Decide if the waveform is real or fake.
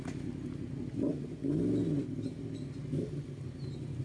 real